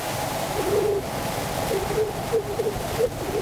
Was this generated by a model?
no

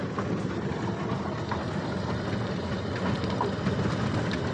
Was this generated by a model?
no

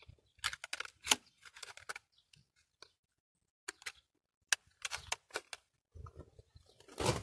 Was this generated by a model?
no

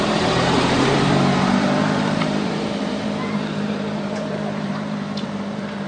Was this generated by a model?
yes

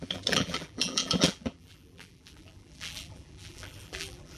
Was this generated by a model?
yes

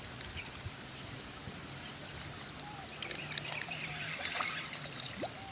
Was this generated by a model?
yes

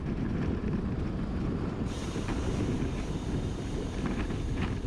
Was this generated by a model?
yes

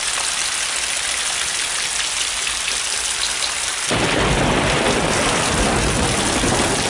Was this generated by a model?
no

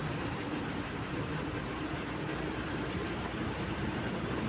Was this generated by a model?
yes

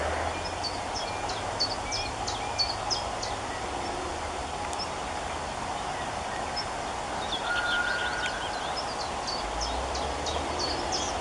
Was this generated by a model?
no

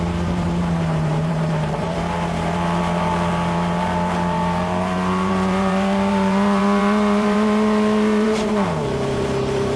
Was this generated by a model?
yes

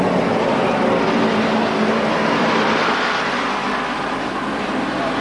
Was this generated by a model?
yes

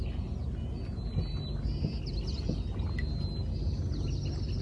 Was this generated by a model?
no